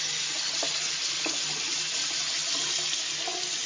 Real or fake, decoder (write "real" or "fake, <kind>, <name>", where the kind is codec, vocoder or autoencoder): real